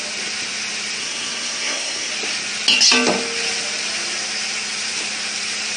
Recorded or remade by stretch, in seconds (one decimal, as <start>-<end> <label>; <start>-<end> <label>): 0.0-1.0 recorded; 1.0-2.1 remade; 2.1-5.8 recorded